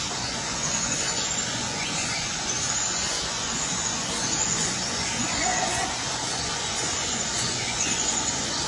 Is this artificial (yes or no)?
yes